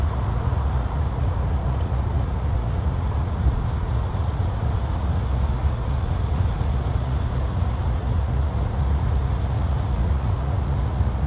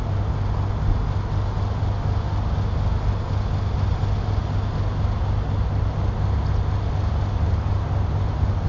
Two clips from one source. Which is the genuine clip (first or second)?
second